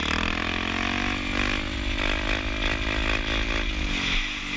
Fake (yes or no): no